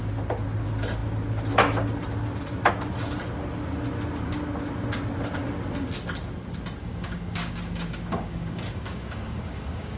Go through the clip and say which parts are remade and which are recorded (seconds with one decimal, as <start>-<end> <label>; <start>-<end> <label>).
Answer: 0.0-6.8 recorded; 6.8-10.0 remade